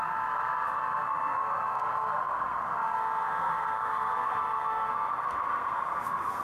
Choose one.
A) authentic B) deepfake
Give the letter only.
B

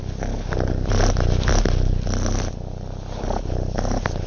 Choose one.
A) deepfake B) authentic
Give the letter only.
B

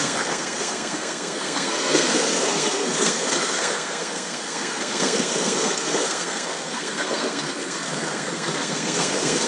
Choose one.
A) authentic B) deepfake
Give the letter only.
B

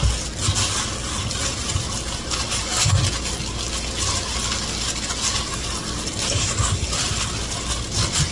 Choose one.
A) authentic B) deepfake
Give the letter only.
A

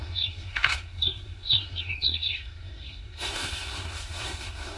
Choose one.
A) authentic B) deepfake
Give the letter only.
B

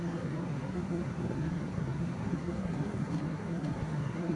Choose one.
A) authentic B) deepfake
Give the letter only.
B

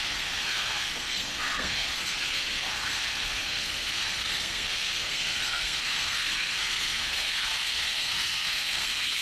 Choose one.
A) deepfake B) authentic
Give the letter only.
A